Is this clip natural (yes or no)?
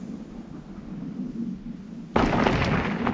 yes